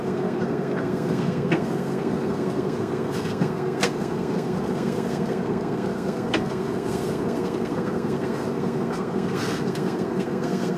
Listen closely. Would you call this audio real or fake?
fake